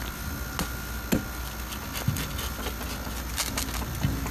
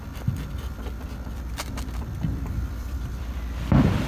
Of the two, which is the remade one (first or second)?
second